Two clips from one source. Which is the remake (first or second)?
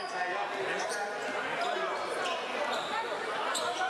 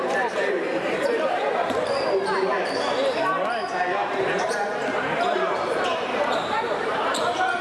second